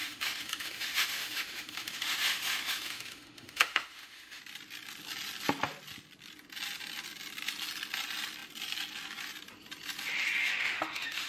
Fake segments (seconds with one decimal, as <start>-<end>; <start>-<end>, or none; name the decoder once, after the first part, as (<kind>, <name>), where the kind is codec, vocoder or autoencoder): 0.0-4.4 (autoencoder, DAC-VAE); 10.4-11.3